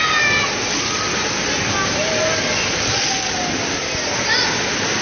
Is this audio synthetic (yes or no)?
no